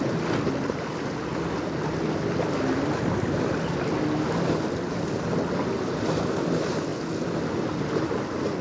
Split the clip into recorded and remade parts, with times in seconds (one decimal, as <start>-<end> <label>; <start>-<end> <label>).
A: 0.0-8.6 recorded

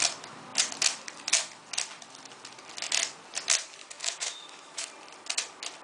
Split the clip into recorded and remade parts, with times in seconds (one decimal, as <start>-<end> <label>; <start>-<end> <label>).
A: 0.0-3.8 recorded; 3.8-4.9 remade; 4.9-5.8 recorded

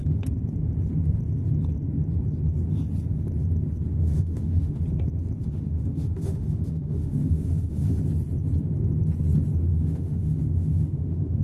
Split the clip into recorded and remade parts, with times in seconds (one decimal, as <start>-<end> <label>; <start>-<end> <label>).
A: 0.0-3.9 recorded; 3.9-4.8 remade; 4.8-5.4 recorded; 5.4-8.0 remade; 8.0-9.7 recorded; 9.7-11.4 remade